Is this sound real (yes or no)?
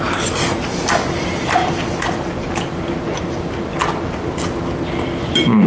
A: yes